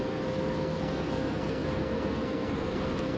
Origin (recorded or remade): remade